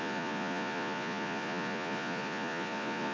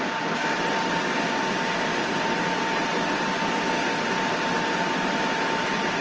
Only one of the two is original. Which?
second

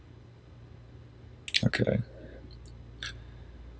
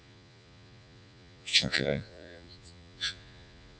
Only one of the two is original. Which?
first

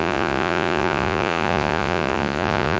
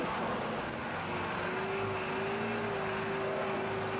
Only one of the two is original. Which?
second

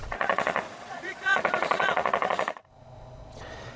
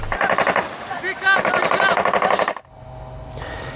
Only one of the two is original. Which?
second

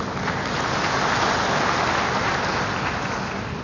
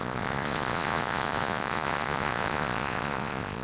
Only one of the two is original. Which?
first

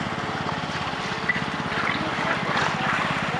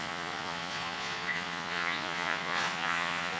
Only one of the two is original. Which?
first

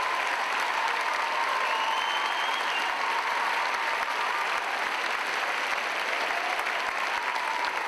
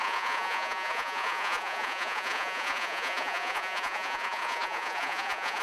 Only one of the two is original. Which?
first